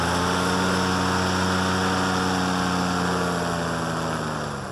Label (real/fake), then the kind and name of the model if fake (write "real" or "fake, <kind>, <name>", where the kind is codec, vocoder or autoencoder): real